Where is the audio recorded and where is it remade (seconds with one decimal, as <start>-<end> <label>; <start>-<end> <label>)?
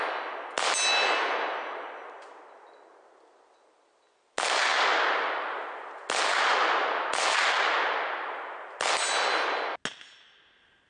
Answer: 0.0-10.9 recorded